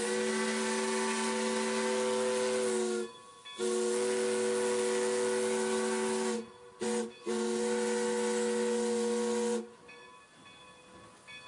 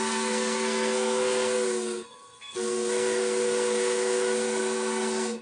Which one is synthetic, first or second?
second